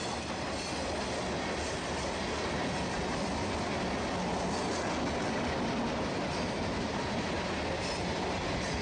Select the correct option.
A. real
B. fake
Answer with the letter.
A